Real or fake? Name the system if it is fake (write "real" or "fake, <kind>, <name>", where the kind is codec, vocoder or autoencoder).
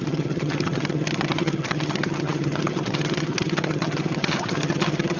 fake, vocoder, HiFi-GAN